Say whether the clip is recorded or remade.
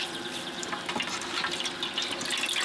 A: recorded